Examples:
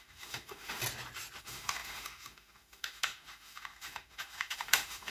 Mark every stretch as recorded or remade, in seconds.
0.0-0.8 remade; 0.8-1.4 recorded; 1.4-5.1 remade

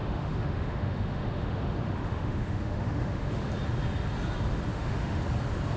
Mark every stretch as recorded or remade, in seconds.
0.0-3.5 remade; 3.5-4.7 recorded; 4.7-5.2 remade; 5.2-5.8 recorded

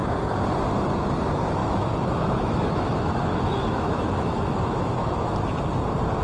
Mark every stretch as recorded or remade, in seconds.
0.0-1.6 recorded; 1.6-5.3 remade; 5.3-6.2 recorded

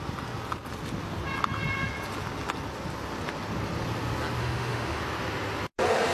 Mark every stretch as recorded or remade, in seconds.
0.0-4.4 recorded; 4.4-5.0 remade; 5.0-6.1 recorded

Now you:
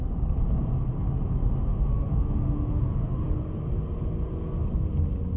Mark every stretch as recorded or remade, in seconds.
0.0-1.7 recorded; 1.7-3.3 remade; 3.3-5.4 recorded

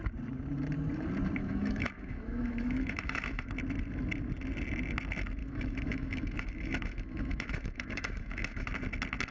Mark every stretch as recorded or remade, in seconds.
0.0-1.4 recorded; 1.4-3.5 remade; 3.5-5.4 recorded; 5.4-8.7 remade; 8.7-9.3 recorded

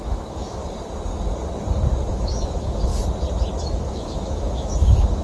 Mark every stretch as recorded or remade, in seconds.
0.0-0.6 remade; 0.6-2.1 recorded; 2.1-2.9 remade; 2.9-3.6 recorded; 3.6-5.2 remade

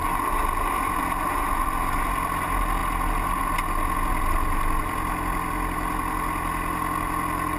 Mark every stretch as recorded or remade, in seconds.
0.0-7.6 recorded